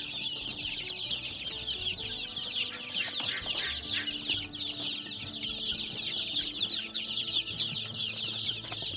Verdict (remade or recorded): recorded